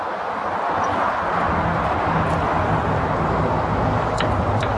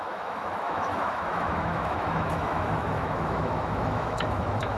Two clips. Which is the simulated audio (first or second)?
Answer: second